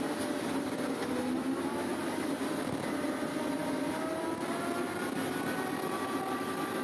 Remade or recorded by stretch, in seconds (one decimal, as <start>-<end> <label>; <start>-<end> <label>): 0.0-6.8 recorded